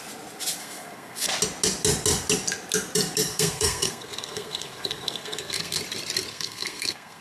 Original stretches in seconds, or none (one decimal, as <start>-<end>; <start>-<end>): 0.0-0.6; 1.3-3.3; 5.8-6.3